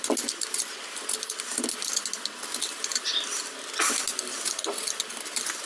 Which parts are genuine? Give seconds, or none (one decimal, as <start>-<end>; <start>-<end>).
0.0-5.7